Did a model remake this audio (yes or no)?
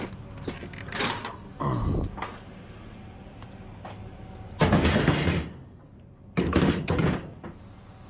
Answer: no